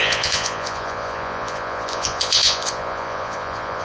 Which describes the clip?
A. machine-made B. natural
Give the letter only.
A